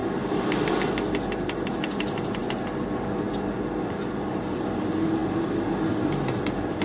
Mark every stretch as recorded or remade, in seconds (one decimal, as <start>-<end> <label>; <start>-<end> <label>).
0.0-6.8 recorded